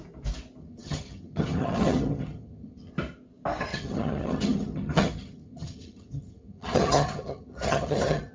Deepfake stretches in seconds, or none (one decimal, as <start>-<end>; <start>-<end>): 0.6-2.9; 3.7-8.3